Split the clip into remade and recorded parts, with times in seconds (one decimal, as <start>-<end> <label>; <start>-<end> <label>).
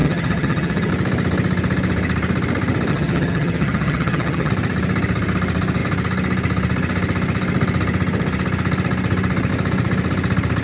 0.0-0.9 remade; 0.9-2.9 recorded; 2.9-4.5 remade; 4.5-10.6 recorded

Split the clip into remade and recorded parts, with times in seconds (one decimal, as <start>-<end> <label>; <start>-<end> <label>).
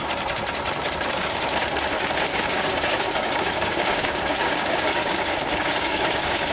0.0-2.3 recorded; 2.3-6.5 remade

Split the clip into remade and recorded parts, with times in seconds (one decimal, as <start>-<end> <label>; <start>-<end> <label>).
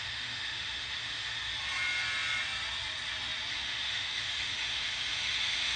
0.0-1.5 remade; 1.5-3.5 recorded; 3.5-5.8 remade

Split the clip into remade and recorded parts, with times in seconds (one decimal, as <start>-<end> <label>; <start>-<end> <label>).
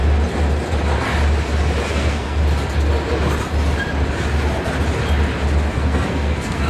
0.0-1.9 recorded; 1.9-2.4 remade; 2.4-5.7 recorded; 5.7-6.7 remade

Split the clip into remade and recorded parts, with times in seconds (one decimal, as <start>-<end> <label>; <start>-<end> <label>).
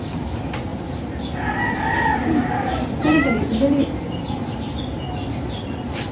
0.0-6.1 recorded